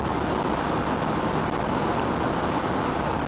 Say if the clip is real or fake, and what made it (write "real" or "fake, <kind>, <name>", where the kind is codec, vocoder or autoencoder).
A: real